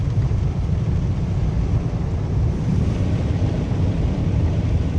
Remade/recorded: remade